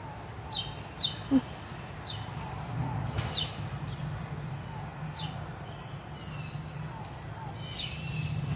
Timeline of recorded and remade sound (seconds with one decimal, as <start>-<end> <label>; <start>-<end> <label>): 0.0-8.6 recorded